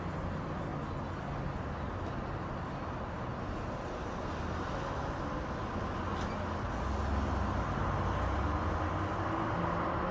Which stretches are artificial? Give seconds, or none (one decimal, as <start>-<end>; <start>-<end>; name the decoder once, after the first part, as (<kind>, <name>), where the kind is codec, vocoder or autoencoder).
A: none